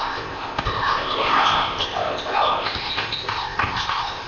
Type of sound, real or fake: fake